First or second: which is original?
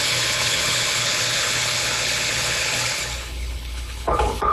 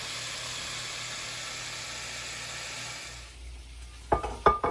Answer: second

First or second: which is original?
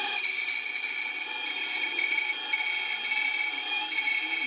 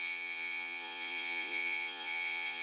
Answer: first